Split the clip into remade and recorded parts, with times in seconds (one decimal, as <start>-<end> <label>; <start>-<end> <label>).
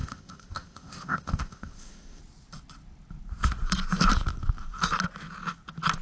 0.0-2.2 remade; 2.2-6.0 recorded